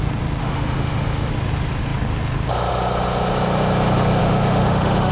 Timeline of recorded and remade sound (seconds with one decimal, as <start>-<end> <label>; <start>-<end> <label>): 0.0-0.4 recorded; 0.4-1.3 remade; 1.3-4.2 recorded; 4.2-5.1 remade